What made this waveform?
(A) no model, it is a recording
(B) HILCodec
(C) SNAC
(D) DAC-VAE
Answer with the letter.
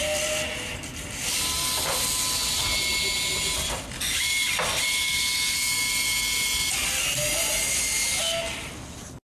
A